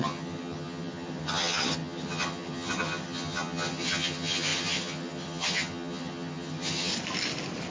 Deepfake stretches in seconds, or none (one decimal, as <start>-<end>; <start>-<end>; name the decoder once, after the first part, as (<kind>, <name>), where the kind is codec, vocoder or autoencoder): 0.0-6.9 (vocoder, HiFi-GAN)